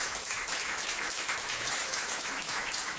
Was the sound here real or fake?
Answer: fake